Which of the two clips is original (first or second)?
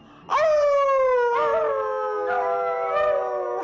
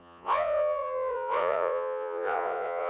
first